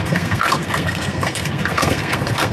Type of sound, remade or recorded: remade